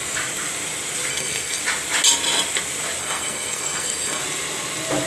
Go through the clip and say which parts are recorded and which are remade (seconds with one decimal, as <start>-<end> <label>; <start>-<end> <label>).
0.0-1.1 recorded; 1.1-1.6 remade; 1.6-3.0 recorded; 3.0-4.2 remade; 4.2-5.1 recorded